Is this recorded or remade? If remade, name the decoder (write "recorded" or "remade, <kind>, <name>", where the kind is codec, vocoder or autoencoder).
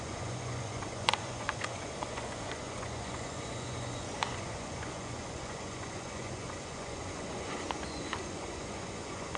remade, vocoder, Vocos